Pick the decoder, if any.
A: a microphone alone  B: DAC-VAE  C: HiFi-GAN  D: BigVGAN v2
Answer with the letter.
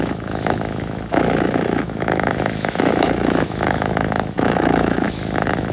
B